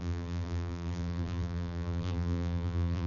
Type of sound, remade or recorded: remade